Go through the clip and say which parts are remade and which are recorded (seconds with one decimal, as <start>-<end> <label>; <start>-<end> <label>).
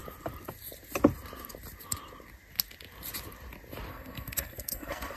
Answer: 0.0-3.9 recorded; 3.9-5.2 remade